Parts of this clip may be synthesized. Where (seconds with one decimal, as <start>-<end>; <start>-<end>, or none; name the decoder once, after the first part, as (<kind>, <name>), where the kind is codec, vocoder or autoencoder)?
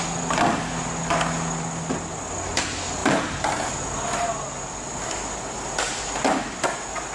none